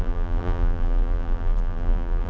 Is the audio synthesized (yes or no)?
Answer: yes